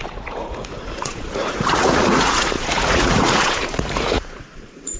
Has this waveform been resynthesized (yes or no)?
yes